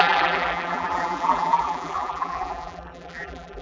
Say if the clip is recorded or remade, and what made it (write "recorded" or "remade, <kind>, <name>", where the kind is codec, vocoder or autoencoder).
remade, vocoder, BigVGAN v2